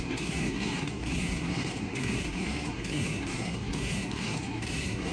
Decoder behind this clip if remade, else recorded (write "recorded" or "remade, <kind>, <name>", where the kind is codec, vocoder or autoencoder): remade, codec, SNAC